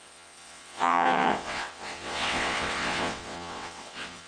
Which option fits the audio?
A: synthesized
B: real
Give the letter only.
A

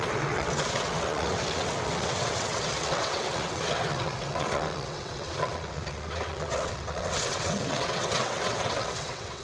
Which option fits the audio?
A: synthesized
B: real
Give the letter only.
A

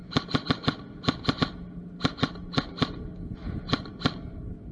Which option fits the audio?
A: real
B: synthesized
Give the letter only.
A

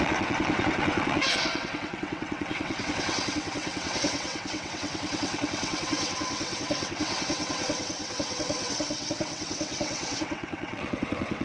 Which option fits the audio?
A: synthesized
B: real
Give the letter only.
A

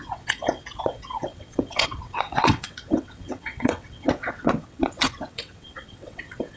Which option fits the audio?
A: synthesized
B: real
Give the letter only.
A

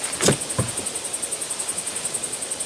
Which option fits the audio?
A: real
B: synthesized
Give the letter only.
A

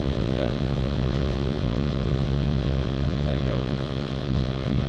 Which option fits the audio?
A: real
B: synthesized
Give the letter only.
B